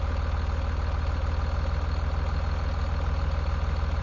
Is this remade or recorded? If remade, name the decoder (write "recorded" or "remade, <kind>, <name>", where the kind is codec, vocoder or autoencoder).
recorded